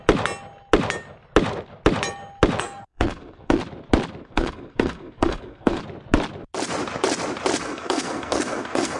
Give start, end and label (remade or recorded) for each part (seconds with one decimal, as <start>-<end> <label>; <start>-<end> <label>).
0.0-2.6 recorded; 2.6-3.6 remade; 3.6-4.2 recorded; 4.2-5.8 remade; 5.8-7.6 recorded; 7.6-9.0 remade